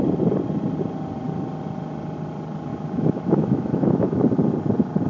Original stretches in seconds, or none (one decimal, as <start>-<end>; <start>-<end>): 0.0-2.7; 4.3-5.1